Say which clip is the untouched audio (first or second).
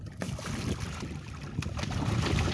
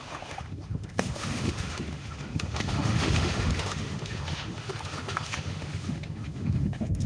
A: first